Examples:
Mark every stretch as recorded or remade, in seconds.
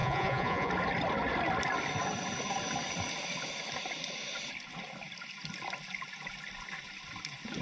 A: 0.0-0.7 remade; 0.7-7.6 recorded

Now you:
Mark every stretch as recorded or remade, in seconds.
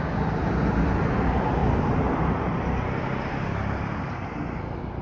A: 0.0-5.0 recorded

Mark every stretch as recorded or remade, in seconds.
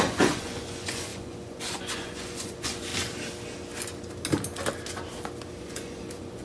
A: 0.0-2.9 remade; 2.9-5.6 recorded; 5.6-6.4 remade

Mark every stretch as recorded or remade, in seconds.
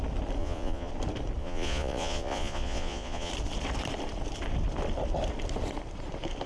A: 0.0-0.4 recorded; 0.4-0.9 remade; 0.9-1.4 recorded; 1.4-3.3 remade; 3.3-6.5 recorded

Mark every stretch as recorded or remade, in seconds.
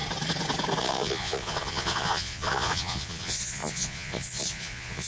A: 0.0-0.8 recorded; 0.8-5.1 remade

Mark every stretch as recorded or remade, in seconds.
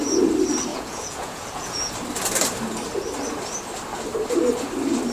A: 0.0-0.7 recorded; 0.7-1.9 remade; 1.9-5.1 recorded